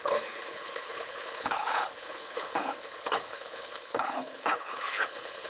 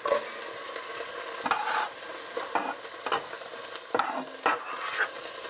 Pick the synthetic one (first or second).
first